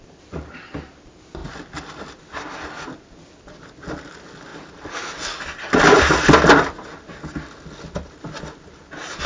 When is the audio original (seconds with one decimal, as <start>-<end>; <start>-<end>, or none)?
0.0-9.3